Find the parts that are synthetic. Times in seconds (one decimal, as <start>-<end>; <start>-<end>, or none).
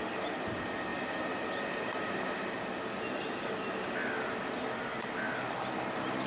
none